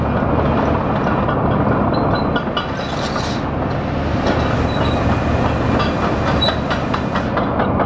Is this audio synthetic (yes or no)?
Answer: no